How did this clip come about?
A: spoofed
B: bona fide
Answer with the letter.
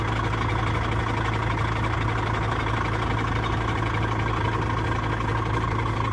B